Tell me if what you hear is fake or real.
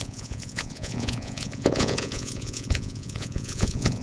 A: fake